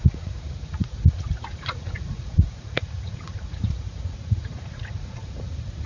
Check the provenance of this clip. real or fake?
fake